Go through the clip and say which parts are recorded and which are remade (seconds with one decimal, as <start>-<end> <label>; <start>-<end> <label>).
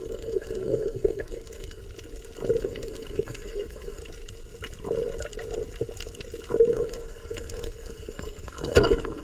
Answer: 0.0-1.8 remade; 1.8-2.6 recorded; 2.6-4.0 remade; 4.0-6.7 recorded; 6.7-9.2 remade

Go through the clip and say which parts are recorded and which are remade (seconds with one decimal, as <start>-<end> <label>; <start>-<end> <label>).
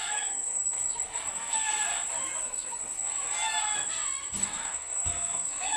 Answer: 0.0-0.8 remade; 0.8-1.3 recorded; 1.3-1.9 remade; 1.9-2.4 recorded; 2.4-2.8 remade; 2.8-4.4 recorded; 4.4-5.8 remade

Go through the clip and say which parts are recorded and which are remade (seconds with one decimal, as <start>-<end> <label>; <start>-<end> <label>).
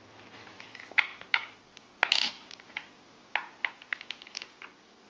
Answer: 0.0-5.1 recorded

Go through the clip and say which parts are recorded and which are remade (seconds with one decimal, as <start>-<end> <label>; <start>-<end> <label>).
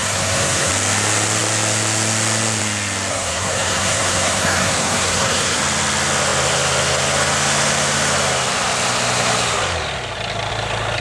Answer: 0.0-0.7 remade; 0.7-3.1 recorded; 3.1-5.6 remade; 5.6-11.0 recorded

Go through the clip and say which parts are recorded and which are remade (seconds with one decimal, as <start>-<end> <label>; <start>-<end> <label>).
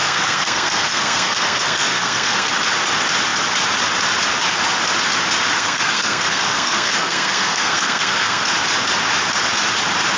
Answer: 0.0-2.5 remade; 2.5-5.6 recorded; 5.6-8.5 remade; 8.5-10.2 recorded